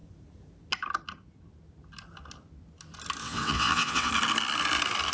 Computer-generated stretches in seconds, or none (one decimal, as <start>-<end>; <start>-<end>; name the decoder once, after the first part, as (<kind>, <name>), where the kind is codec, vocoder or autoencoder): 3.2-4.1 (vocoder, WaveNeXt)